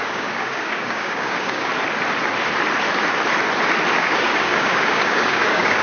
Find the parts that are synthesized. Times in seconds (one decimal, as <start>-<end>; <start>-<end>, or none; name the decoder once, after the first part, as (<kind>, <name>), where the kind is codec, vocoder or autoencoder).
0.0-1.7 (codec, DAC); 3.9-5.8